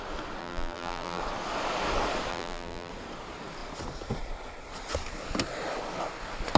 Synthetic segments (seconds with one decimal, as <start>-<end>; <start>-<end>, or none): 0.4-1.2; 2.3-2.9